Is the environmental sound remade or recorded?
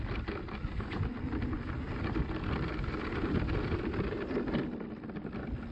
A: remade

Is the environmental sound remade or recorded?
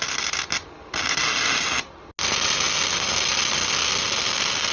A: recorded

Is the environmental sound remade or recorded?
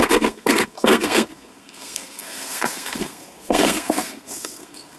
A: remade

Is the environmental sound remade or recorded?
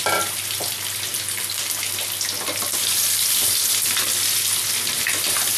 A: recorded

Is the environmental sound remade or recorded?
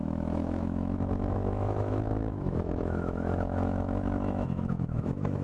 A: remade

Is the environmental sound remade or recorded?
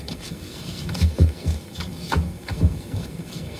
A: remade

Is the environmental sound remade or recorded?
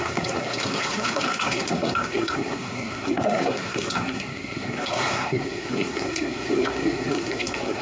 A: remade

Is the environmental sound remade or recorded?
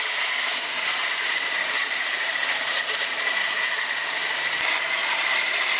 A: recorded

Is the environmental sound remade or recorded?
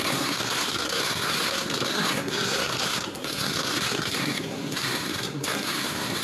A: remade